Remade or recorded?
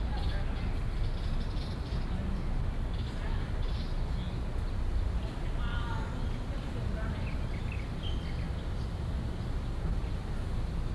recorded